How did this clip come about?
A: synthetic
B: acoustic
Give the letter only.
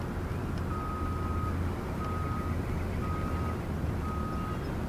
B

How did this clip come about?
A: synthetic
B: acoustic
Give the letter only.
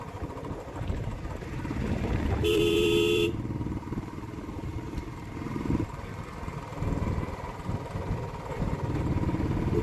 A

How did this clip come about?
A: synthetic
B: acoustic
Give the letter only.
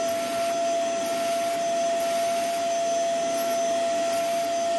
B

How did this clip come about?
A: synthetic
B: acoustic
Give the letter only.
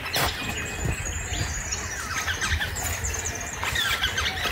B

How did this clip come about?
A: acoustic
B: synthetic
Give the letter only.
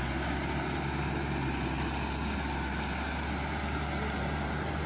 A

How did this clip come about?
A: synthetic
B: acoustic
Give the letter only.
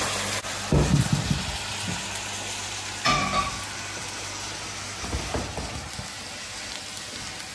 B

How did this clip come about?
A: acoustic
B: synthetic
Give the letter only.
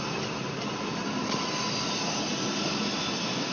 A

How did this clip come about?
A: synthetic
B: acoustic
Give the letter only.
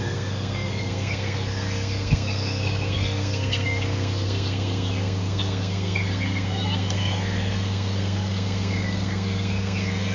A